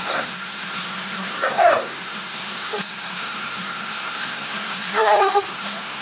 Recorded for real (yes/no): no